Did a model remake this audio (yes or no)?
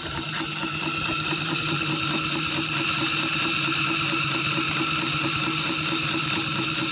no